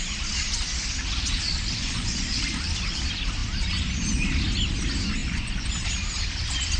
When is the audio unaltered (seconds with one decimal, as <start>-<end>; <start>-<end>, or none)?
0.0-1.8; 2.4-5.2; 5.7-6.8